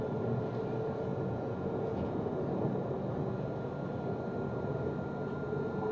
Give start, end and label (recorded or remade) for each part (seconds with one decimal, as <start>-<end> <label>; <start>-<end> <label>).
0.0-1.1 recorded; 1.1-2.3 remade; 2.3-5.9 recorded